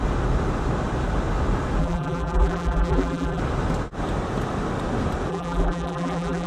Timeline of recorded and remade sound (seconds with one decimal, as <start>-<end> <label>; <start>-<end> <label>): 0.0-1.8 recorded; 1.8-3.4 remade; 3.4-5.3 recorded; 5.3-6.5 remade